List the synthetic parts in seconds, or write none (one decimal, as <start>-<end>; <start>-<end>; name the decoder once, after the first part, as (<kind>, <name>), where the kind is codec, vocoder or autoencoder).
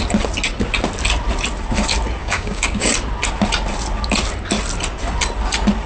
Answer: 2.2-2.9 (codec, DAC)